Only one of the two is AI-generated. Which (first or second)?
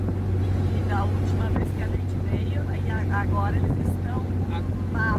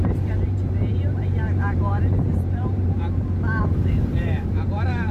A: second